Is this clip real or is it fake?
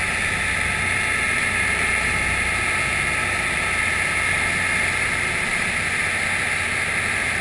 real